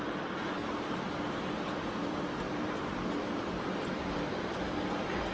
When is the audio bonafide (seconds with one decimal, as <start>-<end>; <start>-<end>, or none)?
0.0-0.6; 3.8-5.3